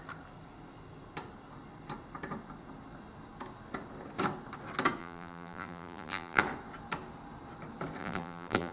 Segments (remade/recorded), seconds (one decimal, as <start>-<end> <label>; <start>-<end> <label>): 0.0-5.0 recorded; 5.0-6.4 remade; 6.4-8.0 recorded; 8.0-8.7 remade